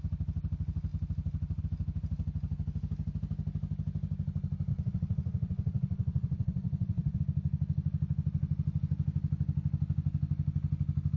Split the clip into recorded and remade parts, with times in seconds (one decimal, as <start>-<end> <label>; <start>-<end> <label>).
0.0-4.7 recorded; 4.7-7.2 remade; 7.2-11.2 recorded